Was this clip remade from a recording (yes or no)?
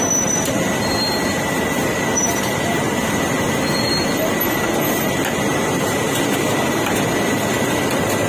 no